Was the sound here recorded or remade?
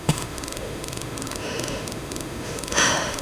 remade